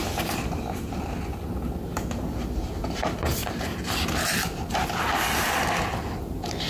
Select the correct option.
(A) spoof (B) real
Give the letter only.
B